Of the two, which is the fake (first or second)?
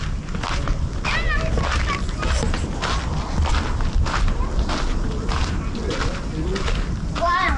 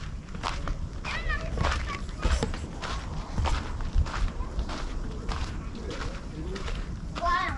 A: second